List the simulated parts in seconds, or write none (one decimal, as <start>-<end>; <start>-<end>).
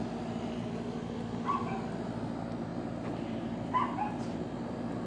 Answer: none